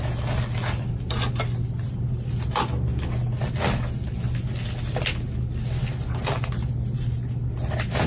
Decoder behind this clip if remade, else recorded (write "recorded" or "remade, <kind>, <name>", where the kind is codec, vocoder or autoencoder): recorded